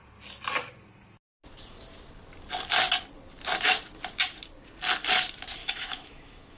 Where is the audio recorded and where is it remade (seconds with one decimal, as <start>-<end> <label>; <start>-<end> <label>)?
0.0-5.6 recorded; 5.6-6.6 remade